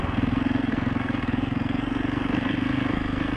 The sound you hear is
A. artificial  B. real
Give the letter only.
A